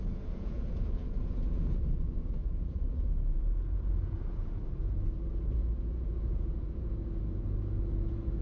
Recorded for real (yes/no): no